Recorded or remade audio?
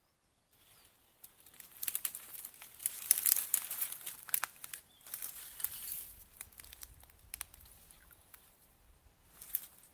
recorded